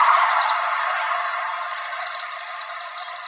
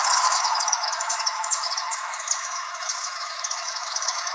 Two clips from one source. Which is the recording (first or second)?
first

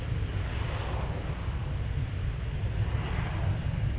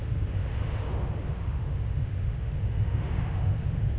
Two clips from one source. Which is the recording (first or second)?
first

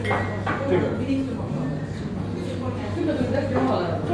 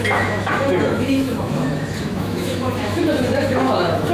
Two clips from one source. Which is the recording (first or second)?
first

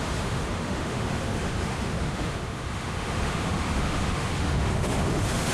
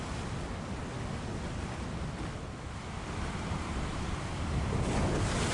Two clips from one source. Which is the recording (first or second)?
second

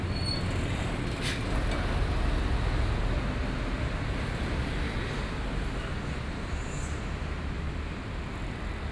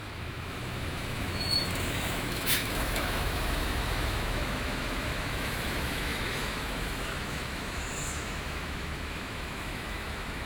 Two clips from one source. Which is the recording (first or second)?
first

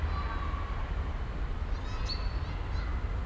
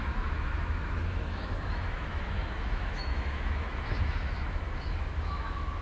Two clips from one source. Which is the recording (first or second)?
first